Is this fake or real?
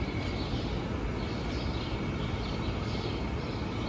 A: real